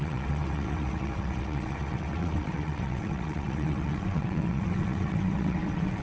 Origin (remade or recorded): remade